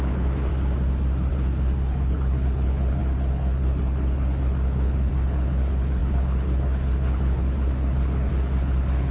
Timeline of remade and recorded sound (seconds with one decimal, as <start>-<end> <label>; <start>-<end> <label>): 0.0-0.5 remade; 0.5-1.3 recorded; 1.3-9.1 remade